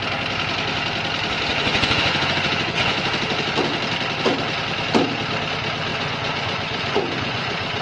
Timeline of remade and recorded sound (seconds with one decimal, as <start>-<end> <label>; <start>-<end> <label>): 0.0-1.5 recorded; 1.5-3.0 remade; 3.0-5.9 recorded; 5.9-7.8 remade